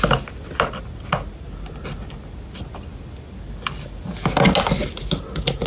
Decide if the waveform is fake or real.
real